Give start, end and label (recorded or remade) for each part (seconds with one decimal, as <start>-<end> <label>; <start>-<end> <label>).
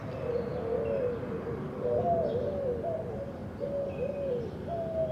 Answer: 0.0-5.1 recorded